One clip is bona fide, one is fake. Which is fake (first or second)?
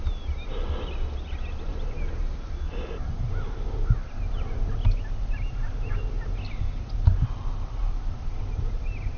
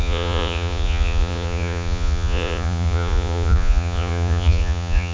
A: second